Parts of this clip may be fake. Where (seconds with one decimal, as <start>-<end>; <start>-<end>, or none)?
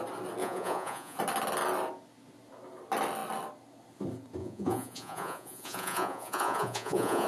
0.4-1.2; 4.4-7.3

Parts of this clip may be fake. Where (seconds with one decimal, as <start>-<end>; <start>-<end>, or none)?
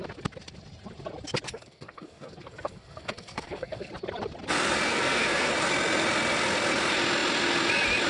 1.5-3.9; 4.9-5.5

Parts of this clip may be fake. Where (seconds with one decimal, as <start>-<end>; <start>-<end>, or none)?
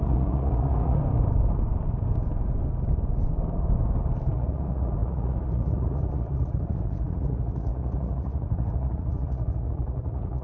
0.0-1.0; 4.3-10.4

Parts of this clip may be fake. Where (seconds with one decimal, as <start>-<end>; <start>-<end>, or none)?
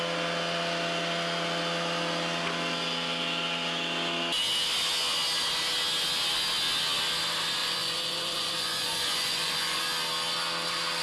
7.6-9.8